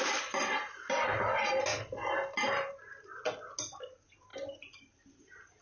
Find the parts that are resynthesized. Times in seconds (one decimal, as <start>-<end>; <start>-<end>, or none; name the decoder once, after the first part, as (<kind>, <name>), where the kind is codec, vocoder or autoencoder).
none